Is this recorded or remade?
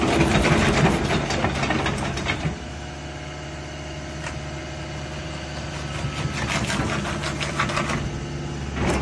recorded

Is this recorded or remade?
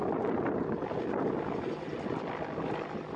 recorded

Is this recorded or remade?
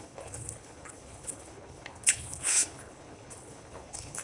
remade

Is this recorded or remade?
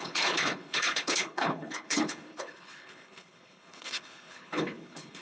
remade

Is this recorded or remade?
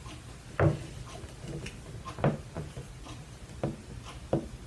recorded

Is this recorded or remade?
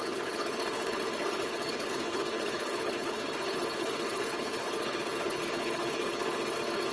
remade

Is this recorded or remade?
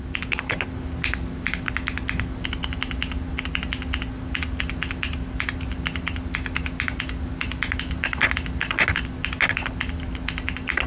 recorded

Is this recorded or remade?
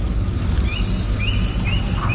recorded